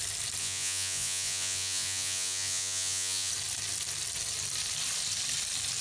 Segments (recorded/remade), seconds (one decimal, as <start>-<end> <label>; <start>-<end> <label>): 0.0-0.4 recorded; 0.4-3.3 remade; 3.3-5.8 recorded